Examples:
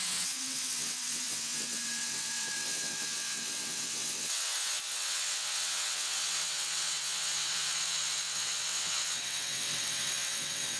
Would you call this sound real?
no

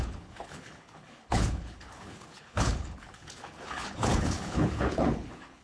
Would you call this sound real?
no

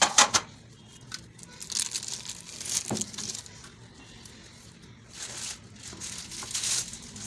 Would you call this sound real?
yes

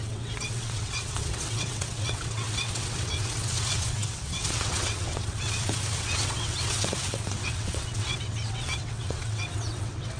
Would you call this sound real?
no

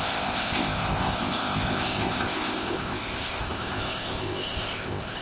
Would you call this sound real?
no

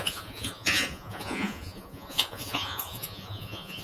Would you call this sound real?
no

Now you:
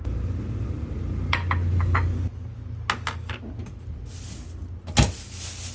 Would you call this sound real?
yes